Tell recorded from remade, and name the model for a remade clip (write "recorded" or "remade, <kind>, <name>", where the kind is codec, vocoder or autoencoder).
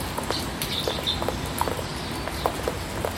recorded